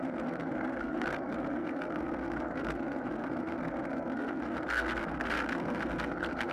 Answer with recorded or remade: remade